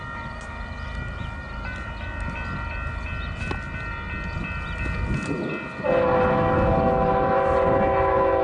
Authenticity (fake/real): real